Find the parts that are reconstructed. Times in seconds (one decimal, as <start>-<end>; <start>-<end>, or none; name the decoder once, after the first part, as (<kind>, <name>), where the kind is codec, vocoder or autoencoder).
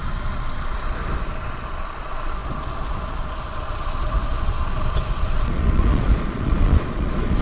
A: 0.0-7.4 (vocoder, Vocos)